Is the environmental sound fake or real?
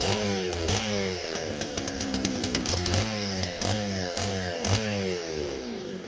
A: fake